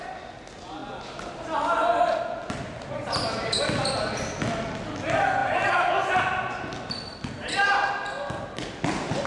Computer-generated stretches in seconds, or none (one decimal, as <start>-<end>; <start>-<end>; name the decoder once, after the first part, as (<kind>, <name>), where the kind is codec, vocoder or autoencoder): none